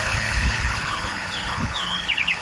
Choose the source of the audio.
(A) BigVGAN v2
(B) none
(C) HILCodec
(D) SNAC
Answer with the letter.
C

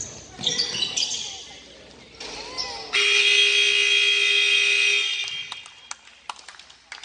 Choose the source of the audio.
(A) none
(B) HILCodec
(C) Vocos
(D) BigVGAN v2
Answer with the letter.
A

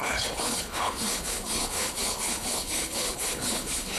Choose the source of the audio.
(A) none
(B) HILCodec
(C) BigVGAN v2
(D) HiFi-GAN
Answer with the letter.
B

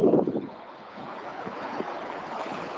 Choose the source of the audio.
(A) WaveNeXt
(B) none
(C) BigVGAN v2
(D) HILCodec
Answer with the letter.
D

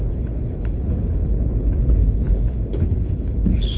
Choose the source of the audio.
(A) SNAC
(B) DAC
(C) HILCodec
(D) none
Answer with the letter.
C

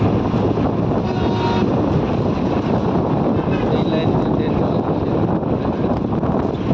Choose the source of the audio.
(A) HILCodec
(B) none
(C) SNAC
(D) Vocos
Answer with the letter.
B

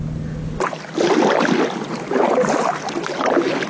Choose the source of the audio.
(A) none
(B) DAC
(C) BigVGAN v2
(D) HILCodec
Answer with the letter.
A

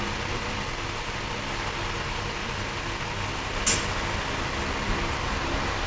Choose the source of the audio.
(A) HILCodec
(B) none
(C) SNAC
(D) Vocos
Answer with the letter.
B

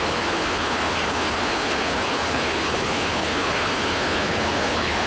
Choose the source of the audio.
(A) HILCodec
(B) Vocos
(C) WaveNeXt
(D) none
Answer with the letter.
A